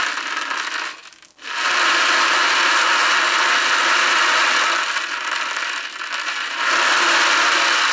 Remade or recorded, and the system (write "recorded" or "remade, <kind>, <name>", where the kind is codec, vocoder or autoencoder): recorded